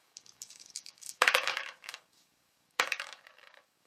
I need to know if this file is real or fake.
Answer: fake